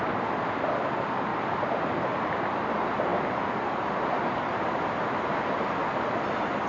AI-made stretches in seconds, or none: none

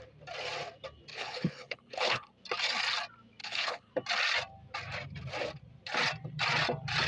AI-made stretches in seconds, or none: 1.1-2.3 (codec, HILCodec); 3.4-3.9